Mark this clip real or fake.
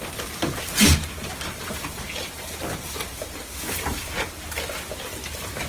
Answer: real